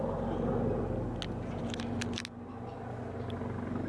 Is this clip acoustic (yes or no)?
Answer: yes